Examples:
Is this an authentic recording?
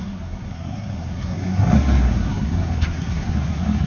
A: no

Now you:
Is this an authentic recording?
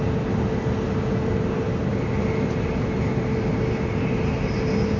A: yes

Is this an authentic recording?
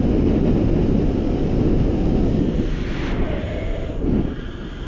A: yes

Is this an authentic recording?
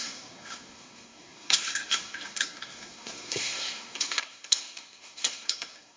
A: no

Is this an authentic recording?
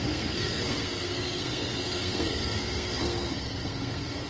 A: no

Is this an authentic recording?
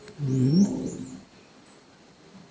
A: yes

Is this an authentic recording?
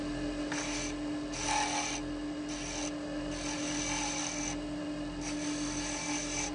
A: yes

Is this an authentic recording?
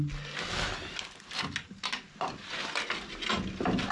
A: yes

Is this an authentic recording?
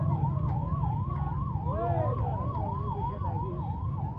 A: yes